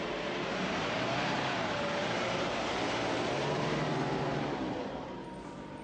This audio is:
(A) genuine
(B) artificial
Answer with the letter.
B